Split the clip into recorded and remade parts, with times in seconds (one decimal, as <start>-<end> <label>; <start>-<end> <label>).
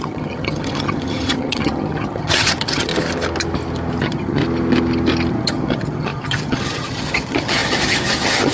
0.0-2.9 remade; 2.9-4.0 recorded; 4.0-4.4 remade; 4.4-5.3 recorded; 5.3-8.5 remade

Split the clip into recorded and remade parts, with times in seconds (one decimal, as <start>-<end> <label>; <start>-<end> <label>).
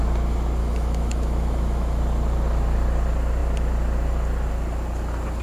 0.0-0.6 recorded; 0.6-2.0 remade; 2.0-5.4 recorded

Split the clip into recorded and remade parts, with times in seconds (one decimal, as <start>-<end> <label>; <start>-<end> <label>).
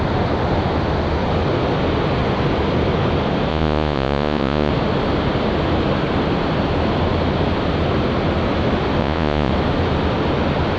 0.0-3.5 recorded; 3.5-4.7 remade; 4.7-9.0 recorded; 9.0-9.5 remade; 9.5-10.8 recorded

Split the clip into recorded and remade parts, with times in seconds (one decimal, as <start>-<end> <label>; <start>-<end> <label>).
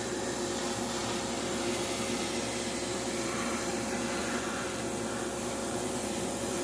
0.0-4.2 recorded; 4.2-4.8 remade; 4.8-5.6 recorded; 5.6-6.6 remade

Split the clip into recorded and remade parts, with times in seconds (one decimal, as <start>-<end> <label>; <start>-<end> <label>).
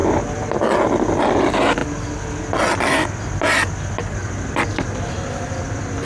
0.0-6.1 recorded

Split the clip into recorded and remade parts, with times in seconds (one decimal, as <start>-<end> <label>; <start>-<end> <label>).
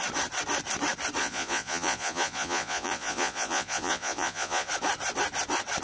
0.0-1.2 recorded; 1.2-4.7 remade; 4.7-5.8 recorded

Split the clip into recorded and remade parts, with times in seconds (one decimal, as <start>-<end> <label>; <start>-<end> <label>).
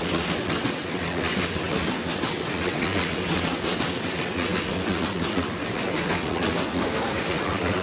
0.0-6.8 remade; 6.8-7.3 recorded; 7.3-7.8 remade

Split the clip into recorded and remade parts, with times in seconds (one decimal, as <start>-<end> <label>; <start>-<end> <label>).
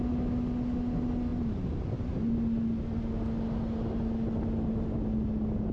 0.0-5.7 recorded